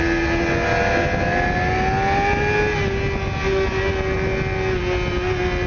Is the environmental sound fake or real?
real